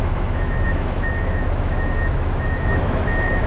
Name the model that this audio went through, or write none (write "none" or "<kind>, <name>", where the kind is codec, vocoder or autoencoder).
autoencoder, DAC-VAE